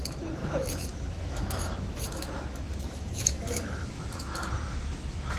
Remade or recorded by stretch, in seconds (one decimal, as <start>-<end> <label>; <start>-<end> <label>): 0.0-5.4 remade